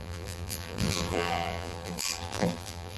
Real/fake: fake